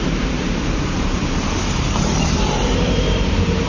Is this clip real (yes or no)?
no